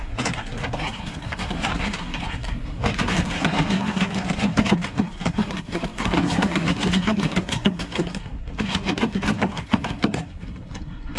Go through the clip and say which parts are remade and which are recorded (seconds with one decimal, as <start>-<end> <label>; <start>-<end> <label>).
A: 0.0-11.2 remade